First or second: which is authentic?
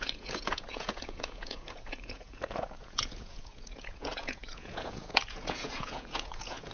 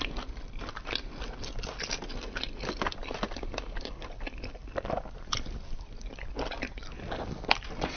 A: second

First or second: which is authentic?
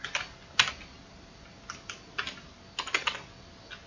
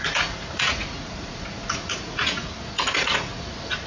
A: first